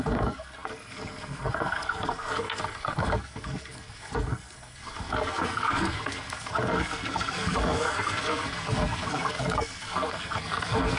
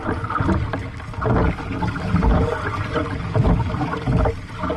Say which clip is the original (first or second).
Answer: second